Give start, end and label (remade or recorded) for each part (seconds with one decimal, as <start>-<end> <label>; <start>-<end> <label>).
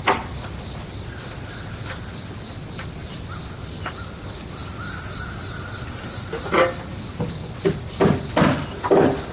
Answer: 0.0-9.3 recorded